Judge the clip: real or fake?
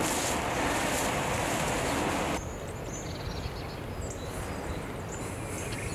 real